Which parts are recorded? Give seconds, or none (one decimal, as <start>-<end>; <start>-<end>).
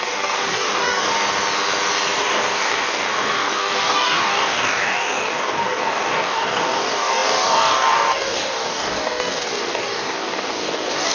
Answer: 1.1-2.2